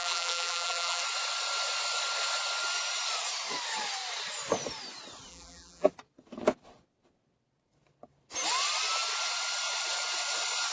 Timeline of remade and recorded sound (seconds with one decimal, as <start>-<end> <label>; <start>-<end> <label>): 0.0-1.0 remade; 1.0-5.3 recorded; 5.3-5.9 remade; 5.9-10.7 recorded